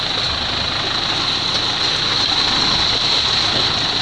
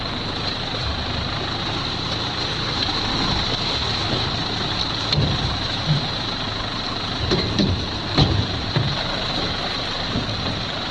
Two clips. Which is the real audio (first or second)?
first